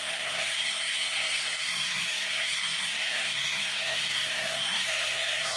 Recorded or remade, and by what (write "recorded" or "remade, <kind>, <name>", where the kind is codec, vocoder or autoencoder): remade, codec, SNAC